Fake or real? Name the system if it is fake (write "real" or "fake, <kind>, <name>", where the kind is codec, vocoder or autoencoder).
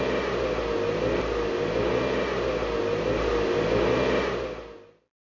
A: real